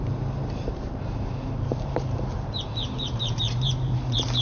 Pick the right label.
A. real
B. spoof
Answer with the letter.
B